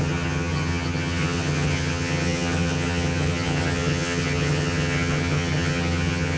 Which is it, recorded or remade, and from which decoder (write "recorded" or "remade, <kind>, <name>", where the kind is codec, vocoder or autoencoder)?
remade, vocoder, HiFi-GAN